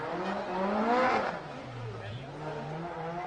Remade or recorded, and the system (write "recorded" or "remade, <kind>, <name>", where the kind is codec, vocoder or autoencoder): recorded